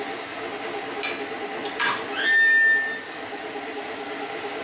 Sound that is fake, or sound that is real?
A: real